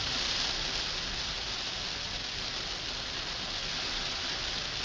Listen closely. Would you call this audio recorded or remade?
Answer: recorded